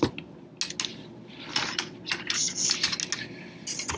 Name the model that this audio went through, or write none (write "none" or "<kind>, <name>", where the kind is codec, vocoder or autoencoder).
none